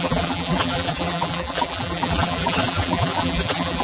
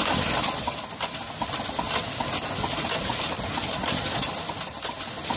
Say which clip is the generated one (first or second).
first